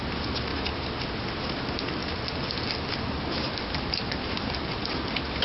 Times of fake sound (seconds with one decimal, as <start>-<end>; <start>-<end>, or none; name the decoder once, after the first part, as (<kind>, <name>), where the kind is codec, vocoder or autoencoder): 0.0-0.5 (vocoder, BigVGAN v2); 3.7-5.4